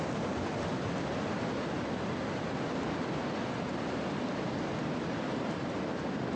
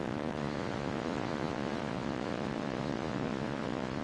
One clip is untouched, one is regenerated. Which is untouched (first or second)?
first